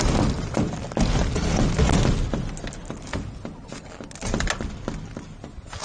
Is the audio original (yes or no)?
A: yes